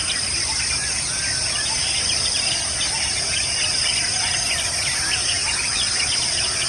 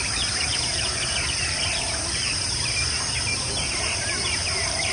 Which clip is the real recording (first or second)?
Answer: first